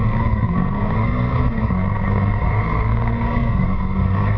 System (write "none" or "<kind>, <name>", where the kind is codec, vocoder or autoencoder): codec, SNAC